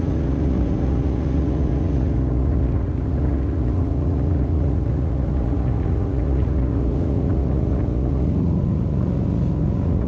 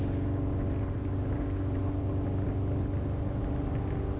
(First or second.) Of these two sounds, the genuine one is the second